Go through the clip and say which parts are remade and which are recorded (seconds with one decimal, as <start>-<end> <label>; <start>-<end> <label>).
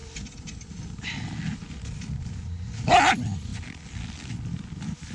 0.0-3.1 recorded; 3.1-3.5 remade; 3.5-5.1 recorded